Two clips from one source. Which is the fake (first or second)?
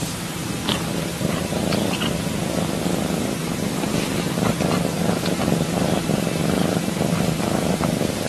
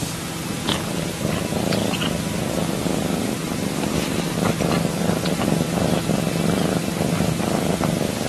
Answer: first